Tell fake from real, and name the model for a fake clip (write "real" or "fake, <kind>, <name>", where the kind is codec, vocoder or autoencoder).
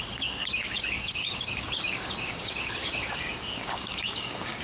fake, codec, DAC